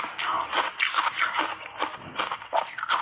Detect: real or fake real